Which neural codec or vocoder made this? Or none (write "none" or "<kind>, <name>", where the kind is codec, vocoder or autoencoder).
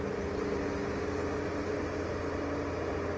none